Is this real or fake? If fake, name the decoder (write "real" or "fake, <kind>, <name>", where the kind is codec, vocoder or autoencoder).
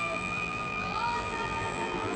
fake, vocoder, BigVGAN v2